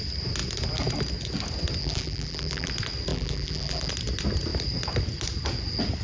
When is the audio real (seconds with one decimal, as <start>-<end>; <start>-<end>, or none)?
0.0-1.8; 2.7-3.1; 3.9-6.0